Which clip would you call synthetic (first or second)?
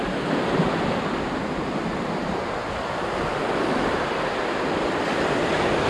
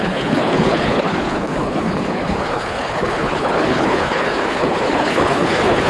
second